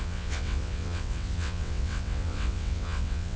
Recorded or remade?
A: remade